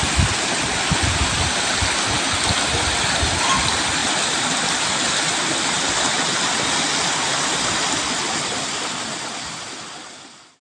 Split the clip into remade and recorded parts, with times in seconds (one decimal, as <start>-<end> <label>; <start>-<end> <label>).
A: 0.0-10.6 recorded